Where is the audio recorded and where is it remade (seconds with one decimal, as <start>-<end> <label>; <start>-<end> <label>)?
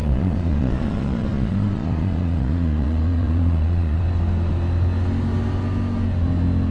0.0-4.0 remade; 4.0-6.7 recorded